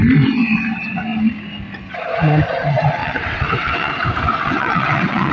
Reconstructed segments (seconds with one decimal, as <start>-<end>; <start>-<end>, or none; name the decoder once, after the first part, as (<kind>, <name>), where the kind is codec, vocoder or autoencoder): 3.0-3.9 (vocoder, WaveNeXt); 4.3-5.3